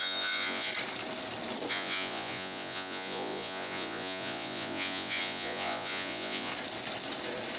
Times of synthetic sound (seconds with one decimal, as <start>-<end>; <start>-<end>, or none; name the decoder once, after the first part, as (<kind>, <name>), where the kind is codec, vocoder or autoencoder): 0.0-0.7 (vocoder, Vocos); 1.7-6.5